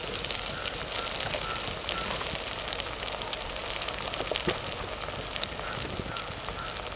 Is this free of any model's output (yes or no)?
yes